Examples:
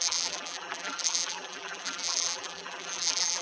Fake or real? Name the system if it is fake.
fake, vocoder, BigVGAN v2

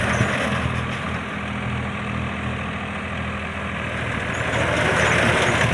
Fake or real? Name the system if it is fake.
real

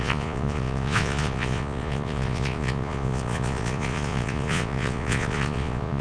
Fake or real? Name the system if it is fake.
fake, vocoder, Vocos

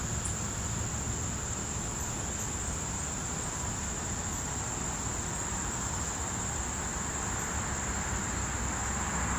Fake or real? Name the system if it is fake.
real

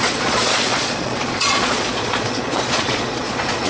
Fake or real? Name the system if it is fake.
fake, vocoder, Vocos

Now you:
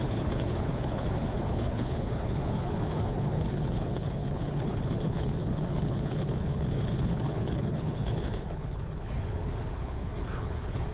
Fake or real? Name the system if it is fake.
fake, codec, HILCodec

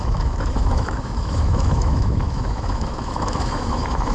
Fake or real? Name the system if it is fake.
fake, autoencoder, DAC-VAE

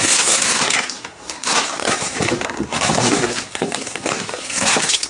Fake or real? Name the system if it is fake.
fake, codec, SNAC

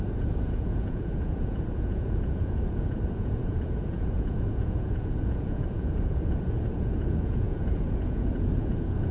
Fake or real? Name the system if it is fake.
fake, vocoder, Vocos